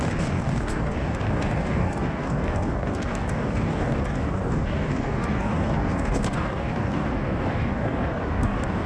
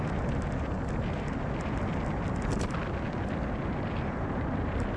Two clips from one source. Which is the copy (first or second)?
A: first